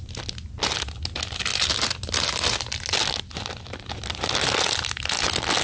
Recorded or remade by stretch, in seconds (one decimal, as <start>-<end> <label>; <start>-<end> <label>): 0.0-5.6 recorded